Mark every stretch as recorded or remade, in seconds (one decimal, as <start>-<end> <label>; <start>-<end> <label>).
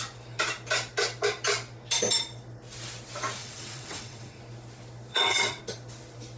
0.0-3.4 recorded; 3.4-4.4 remade; 4.4-5.1 recorded; 5.1-5.6 remade; 5.6-6.4 recorded